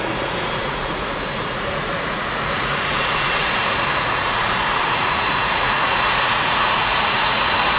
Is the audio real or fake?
fake